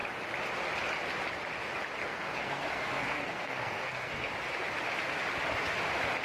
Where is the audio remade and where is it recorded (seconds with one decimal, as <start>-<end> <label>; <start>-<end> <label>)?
0.0-2.0 recorded; 2.0-4.3 remade; 4.3-6.2 recorded